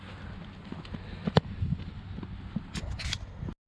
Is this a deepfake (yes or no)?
no